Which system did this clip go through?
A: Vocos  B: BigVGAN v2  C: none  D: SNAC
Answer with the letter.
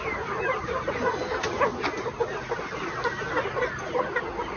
C